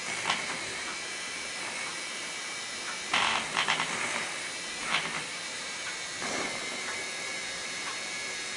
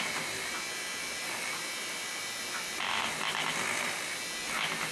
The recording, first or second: second